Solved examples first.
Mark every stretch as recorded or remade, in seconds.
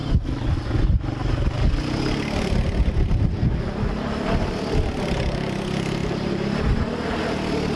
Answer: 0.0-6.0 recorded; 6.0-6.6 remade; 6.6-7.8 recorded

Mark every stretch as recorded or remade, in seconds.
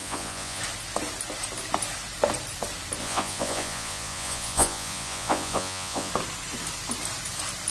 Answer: 0.0-0.6 remade; 0.6-3.0 recorded; 3.0-6.1 remade; 6.1-7.7 recorded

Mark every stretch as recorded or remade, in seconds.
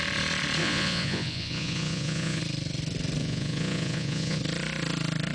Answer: 0.0-0.6 recorded; 0.6-2.4 remade; 2.4-3.2 recorded; 3.2-4.4 remade; 4.4-5.3 recorded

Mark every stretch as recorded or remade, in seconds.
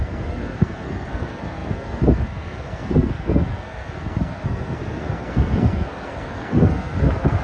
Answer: 0.0-7.4 remade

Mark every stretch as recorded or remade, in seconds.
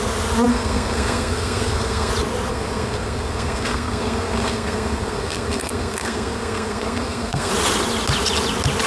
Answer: 0.0-0.5 recorded; 0.5-2.1 remade; 2.1-2.5 recorded; 2.5-7.5 remade; 7.5-8.9 recorded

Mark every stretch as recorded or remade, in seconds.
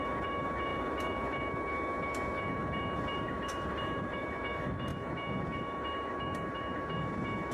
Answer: 0.0-7.5 remade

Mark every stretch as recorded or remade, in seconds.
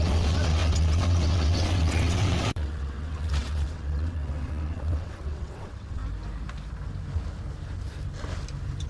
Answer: 0.0-6.0 remade; 6.0-8.9 recorded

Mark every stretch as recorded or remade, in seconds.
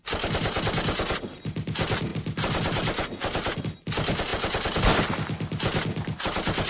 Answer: 0.0-6.7 recorded